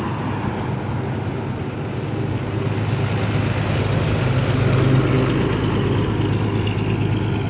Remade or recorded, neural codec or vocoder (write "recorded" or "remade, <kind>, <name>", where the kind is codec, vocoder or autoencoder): recorded